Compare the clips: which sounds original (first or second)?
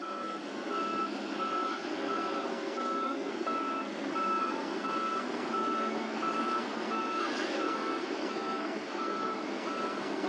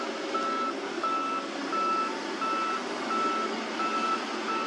second